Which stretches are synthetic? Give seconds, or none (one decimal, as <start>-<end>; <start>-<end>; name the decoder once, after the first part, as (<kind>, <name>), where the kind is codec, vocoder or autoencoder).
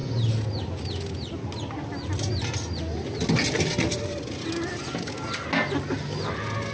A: none